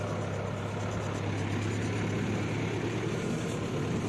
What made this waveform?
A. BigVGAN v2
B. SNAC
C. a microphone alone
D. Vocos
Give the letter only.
C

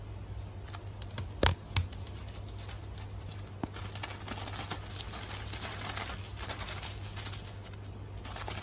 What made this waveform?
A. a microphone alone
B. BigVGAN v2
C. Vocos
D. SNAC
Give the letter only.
A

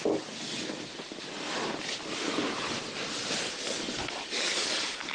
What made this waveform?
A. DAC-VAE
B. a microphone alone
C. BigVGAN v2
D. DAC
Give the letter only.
B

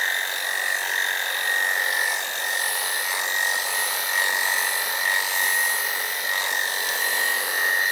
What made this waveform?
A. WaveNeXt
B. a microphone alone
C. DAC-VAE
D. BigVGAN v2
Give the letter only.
B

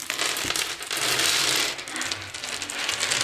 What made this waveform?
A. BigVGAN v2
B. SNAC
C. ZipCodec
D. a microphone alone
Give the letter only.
A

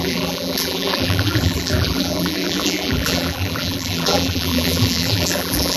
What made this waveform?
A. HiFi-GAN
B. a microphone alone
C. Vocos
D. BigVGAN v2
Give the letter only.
D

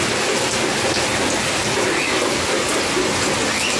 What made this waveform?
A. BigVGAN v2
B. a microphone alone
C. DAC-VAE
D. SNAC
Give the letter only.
B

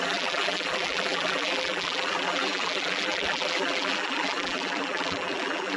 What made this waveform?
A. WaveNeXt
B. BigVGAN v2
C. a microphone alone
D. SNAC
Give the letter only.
B